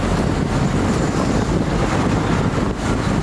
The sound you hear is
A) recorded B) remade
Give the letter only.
A